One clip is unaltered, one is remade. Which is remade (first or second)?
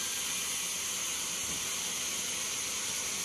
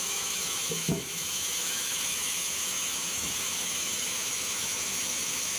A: second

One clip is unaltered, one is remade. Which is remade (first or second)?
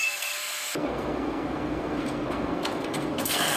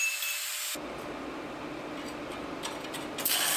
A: first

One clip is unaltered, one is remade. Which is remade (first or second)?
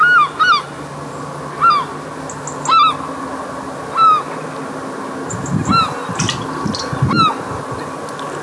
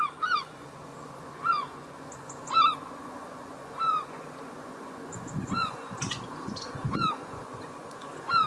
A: second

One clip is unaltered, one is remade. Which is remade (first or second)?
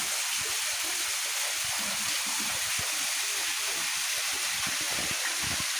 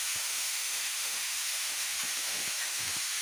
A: second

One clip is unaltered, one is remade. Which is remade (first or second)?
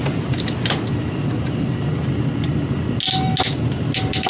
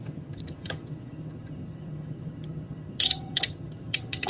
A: second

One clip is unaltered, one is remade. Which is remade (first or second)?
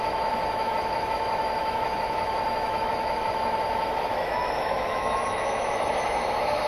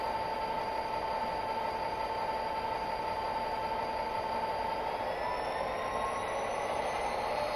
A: first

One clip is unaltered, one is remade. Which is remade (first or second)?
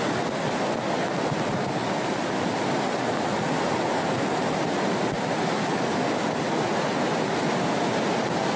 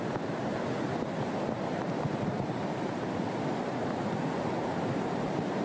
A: second